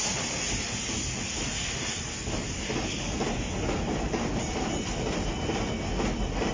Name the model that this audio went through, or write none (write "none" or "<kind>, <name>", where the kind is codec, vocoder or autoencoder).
none